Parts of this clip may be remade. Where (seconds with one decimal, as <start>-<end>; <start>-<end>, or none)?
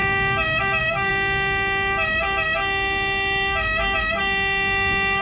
none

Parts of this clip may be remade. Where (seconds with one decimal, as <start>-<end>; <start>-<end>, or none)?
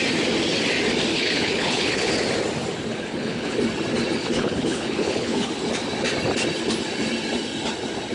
1.1-2.1; 2.9-3.6; 4.2-5.5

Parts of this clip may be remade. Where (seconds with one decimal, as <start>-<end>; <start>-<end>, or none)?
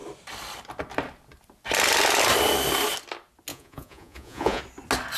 3.5-4.6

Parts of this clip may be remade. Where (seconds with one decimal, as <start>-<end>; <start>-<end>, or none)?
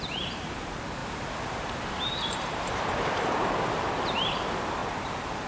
0.0-1.0; 1.6-4.8